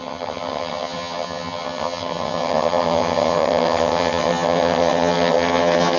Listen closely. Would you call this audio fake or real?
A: fake